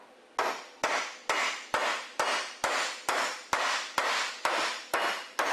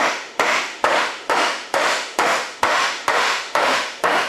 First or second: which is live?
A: first